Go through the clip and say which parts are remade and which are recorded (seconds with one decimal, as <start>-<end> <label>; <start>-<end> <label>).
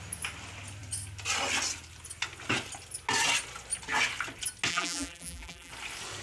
0.0-4.7 recorded; 4.7-5.7 remade; 5.7-6.2 recorded